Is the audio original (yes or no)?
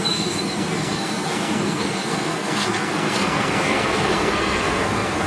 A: no